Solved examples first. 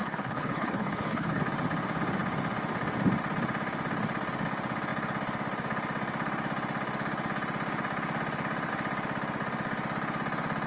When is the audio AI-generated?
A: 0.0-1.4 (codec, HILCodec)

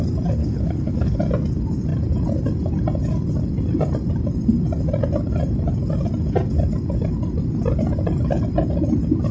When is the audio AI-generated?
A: 0.4-1.2 (codec, HILCodec)

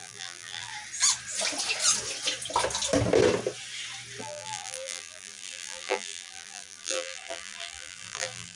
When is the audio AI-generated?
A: 0.0-0.7 (vocoder, BigVGAN v2); 4.2-8.6

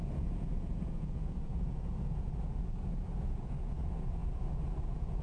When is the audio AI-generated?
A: 0.0-5.2 (vocoder, Vocos)